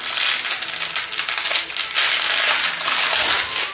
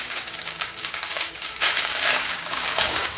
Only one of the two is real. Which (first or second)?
first